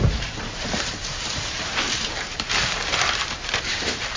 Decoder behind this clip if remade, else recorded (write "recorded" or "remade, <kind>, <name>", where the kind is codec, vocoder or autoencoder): remade, vocoder, BigVGAN v2